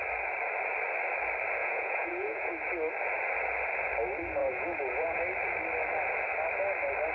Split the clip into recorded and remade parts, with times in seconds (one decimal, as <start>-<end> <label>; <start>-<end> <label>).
0.0-1.6 recorded; 1.6-2.5 remade; 2.5-4.4 recorded; 4.4-5.2 remade; 5.2-7.1 recorded